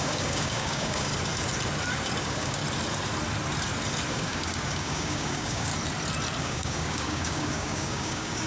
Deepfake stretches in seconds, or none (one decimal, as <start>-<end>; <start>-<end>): 0.0-1.1; 2.2-2.6; 4.1-5.7; 6.4-8.5